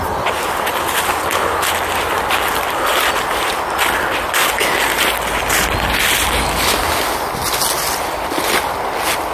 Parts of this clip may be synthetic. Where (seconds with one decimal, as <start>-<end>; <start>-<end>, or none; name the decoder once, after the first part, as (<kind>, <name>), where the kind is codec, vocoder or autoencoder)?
2.9-3.5 (vocoder, BigVGAN v2)